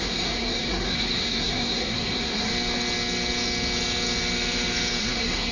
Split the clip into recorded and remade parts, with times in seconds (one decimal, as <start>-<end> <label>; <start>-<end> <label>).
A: 0.0-2.5 remade; 2.5-5.0 recorded; 5.0-5.5 remade